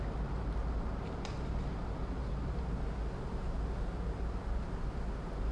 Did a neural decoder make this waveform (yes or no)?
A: no